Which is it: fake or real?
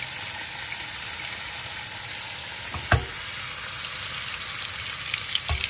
real